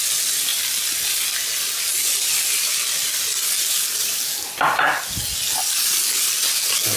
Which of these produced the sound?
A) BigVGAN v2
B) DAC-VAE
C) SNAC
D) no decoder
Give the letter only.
D